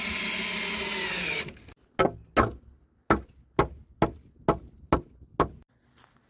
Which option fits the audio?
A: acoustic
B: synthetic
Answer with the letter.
A